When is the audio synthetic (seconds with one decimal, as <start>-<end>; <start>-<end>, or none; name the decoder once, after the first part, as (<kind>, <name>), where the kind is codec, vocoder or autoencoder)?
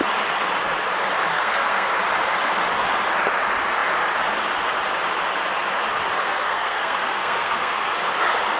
1.3-1.9 (codec, SNAC); 6.2-8.1